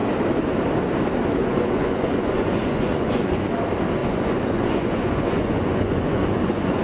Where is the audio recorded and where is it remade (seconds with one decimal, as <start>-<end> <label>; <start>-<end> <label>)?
0.0-1.4 recorded; 1.4-3.5 remade; 3.5-4.0 recorded; 4.0-6.8 remade